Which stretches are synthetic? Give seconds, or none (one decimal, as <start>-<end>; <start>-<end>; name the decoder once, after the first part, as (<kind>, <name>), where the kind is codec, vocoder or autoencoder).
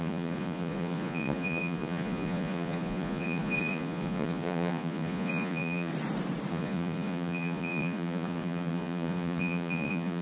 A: 0.0-5.9 (vocoder, Vocos); 6.5-10.2